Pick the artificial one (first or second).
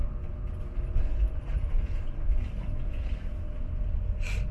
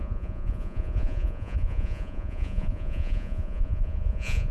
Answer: second